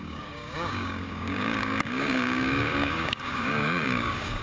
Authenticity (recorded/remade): remade